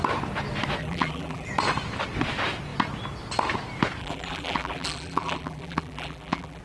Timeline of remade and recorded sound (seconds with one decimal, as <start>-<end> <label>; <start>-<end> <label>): 0.0-0.8 recorded; 0.8-1.5 remade; 1.5-4.0 recorded; 4.0-6.6 remade